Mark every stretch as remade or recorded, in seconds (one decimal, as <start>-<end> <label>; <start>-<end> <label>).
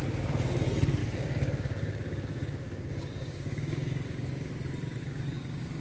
0.0-1.0 recorded; 1.0-4.5 remade; 4.5-5.0 recorded; 5.0-5.8 remade